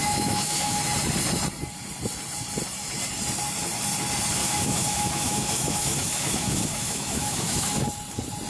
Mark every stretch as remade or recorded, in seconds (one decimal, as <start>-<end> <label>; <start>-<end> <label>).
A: 0.0-0.8 remade; 0.8-4.4 recorded; 4.4-7.8 remade; 7.8-8.5 recorded